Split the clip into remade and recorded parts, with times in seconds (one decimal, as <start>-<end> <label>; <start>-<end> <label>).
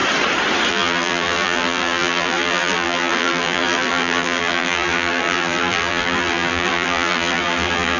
0.0-0.7 recorded; 0.7-8.0 remade